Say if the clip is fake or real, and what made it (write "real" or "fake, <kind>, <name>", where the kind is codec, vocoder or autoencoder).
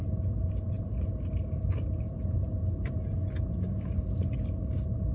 real